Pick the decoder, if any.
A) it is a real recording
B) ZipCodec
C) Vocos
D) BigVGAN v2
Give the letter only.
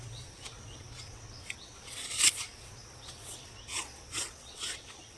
C